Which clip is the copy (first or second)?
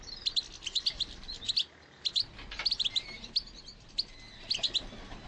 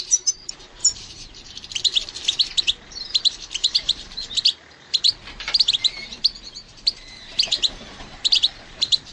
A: second